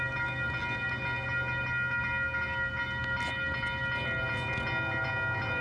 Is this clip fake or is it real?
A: real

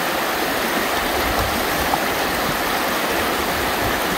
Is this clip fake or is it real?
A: real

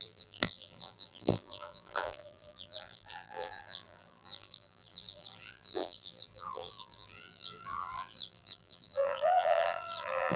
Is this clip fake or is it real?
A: fake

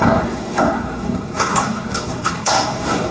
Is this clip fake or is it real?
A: fake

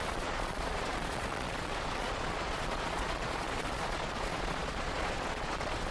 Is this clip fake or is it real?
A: fake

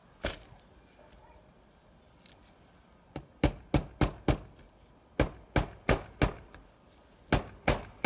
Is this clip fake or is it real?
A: real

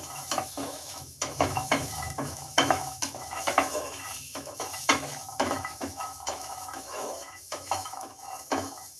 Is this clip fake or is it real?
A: fake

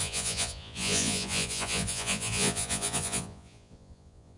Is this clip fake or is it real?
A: fake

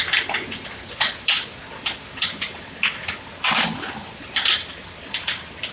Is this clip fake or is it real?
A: real